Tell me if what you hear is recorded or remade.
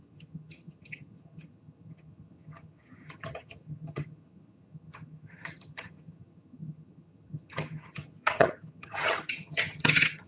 remade